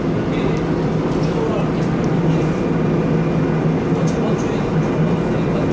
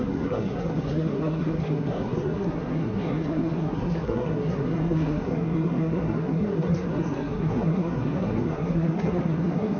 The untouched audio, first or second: first